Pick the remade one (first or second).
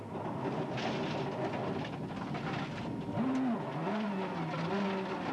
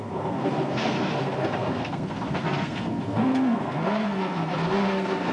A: second